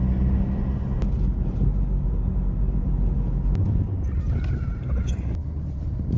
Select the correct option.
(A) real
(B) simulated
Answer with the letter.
A